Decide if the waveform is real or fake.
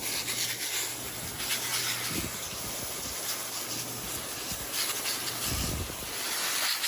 real